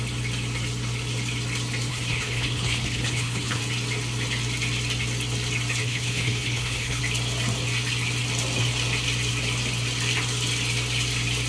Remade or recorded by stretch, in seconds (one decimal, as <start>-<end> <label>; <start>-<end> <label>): 0.0-1.9 recorded; 1.9-3.6 remade; 3.6-5.8 recorded; 5.8-7.0 remade; 7.0-11.5 recorded